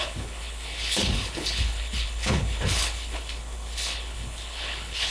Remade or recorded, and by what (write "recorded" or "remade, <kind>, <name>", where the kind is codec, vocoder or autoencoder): remade, codec, HILCodec